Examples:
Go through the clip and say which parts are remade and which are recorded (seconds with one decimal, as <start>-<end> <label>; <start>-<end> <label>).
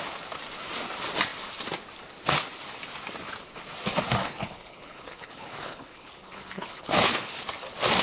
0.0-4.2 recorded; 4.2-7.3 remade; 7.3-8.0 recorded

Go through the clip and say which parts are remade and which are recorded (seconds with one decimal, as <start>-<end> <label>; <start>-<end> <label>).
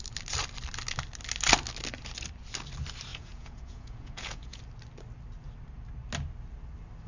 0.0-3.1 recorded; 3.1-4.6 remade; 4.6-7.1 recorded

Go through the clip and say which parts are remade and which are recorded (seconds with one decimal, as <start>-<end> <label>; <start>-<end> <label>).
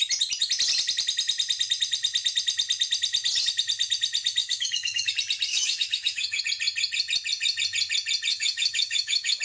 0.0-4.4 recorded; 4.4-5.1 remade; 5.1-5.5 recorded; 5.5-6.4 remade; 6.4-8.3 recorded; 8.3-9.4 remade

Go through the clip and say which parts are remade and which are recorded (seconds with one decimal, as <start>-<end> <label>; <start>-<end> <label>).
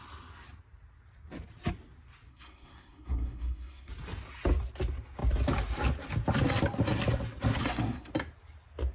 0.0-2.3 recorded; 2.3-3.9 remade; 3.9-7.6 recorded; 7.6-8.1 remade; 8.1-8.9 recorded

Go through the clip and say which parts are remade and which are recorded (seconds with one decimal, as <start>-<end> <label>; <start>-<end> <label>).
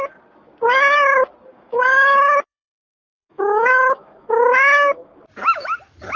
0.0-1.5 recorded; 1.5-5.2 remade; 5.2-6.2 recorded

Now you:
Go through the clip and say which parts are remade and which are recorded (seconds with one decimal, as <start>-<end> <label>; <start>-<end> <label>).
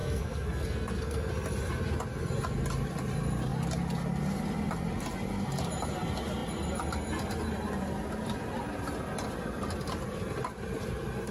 0.0-1.3 remade; 1.3-11.3 recorded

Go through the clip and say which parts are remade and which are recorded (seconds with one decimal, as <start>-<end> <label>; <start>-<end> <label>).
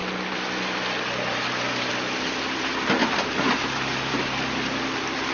0.0-5.3 recorded